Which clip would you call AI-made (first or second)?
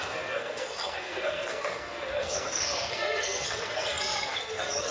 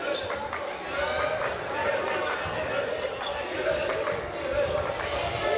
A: first